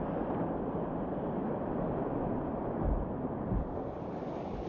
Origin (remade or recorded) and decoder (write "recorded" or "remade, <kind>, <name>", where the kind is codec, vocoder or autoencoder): recorded